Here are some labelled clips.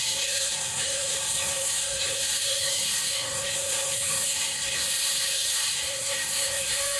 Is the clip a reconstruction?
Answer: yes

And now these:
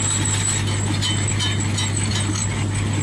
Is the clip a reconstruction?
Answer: no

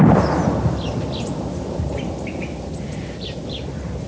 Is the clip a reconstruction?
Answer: no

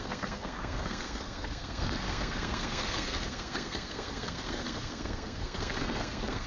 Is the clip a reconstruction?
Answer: yes